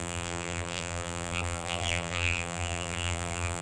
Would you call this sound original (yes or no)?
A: no